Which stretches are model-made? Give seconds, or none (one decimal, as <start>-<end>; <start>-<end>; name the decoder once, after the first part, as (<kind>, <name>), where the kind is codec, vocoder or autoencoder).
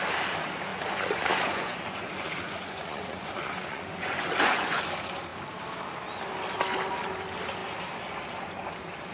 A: 0.7-4.8 (vocoder, Vocos)